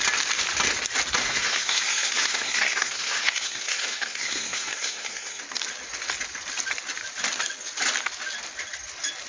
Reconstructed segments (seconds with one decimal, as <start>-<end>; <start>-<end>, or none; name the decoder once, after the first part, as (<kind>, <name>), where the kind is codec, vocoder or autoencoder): 1.2-5.4 (codec, SNAC)